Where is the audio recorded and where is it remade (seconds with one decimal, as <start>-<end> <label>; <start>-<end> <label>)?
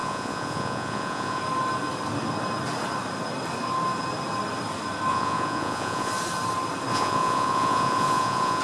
0.0-1.4 remade; 1.4-5.1 recorded; 5.1-6.1 remade; 6.1-6.9 recorded; 6.9-8.6 remade